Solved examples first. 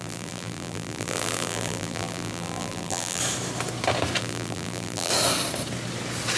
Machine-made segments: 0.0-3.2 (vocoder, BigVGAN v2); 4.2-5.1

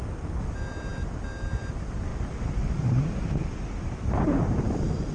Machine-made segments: 2.1-4.6 (vocoder, BigVGAN v2)

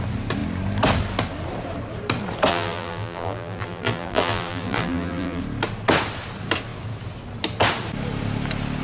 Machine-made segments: 2.5-5.4 (vocoder, BigVGAN v2)

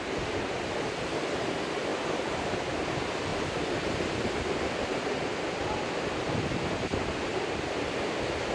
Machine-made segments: 3.3-4.1 (vocoder, BigVGAN v2)